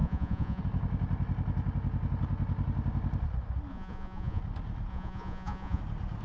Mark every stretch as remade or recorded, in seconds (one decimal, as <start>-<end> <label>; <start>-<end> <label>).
0.0-0.6 remade; 0.6-3.7 recorded; 3.7-4.4 remade; 4.4-4.9 recorded; 4.9-5.8 remade; 5.8-6.2 recorded